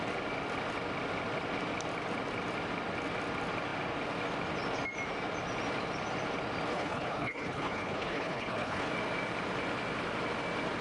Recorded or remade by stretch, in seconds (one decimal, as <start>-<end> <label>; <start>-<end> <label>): 0.0-6.7 recorded; 6.7-8.9 remade; 8.9-10.8 recorded